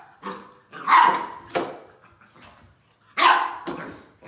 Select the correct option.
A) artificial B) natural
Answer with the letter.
B